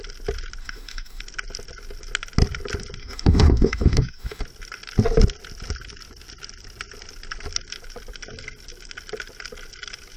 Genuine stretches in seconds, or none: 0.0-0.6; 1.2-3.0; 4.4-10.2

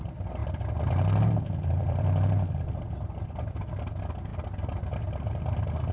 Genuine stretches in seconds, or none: 0.0-0.4; 3.9-4.3; 5.0-5.9

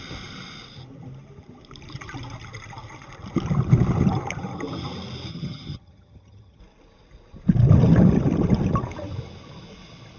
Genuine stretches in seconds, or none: 0.0-5.3; 6.6-10.2

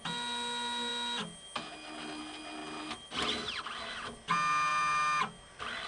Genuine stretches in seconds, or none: 0.0-5.9

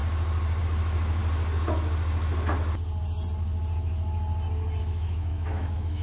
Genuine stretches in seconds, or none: 0.0-0.6; 1.2-4.8

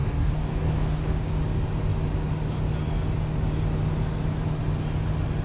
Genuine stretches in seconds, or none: 1.3-5.4